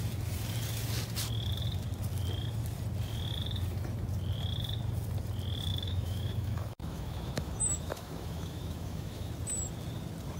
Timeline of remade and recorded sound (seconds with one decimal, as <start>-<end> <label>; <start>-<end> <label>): 0.0-5.7 recorded; 5.7-9.3 remade; 9.3-10.4 recorded